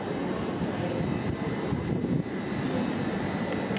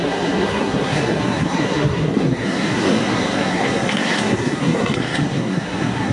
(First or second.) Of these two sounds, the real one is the first